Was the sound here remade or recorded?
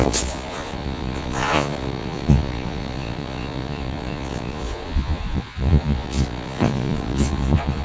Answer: remade